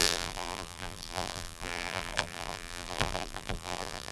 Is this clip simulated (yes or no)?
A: yes